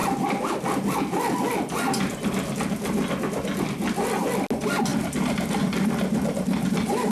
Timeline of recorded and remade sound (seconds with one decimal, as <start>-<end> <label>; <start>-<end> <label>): 0.0-7.1 recorded